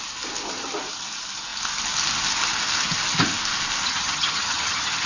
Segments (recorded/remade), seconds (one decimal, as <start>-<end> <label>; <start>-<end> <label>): 0.0-3.8 recorded; 3.8-5.1 remade